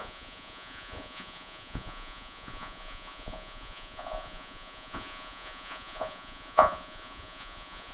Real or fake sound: fake